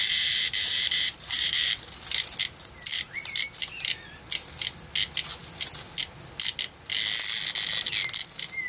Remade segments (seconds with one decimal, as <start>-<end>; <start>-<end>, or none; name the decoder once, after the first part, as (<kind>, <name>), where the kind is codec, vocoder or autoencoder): 0.0-1.7 (vocoder, BigVGAN v2); 2.9-3.5